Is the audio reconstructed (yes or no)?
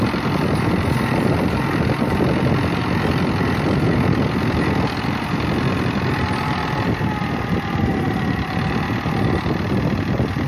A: no